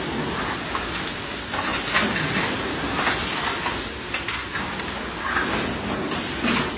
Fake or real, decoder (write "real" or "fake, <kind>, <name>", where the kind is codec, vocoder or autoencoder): real